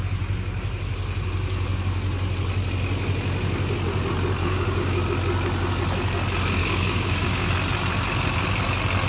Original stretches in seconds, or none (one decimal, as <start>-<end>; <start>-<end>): 0.0-4.4; 5.0-6.6; 7.5-9.1

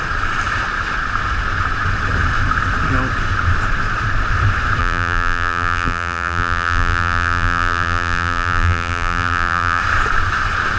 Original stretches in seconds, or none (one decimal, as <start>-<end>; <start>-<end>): 0.0-4.8; 9.8-10.8

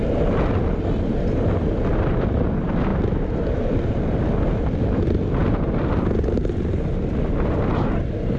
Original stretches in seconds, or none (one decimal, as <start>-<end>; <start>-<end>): 0.0-8.4

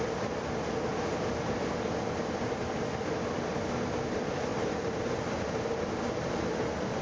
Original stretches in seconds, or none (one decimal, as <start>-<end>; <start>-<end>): 0.0-4.5; 5.0-7.0

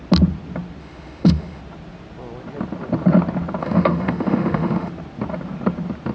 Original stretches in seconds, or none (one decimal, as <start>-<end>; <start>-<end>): 0.0-0.8; 1.6-3.6; 4.9-6.1